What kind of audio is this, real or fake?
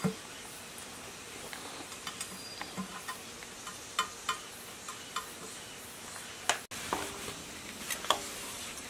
real